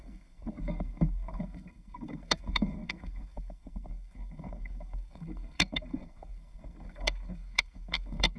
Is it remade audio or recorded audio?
remade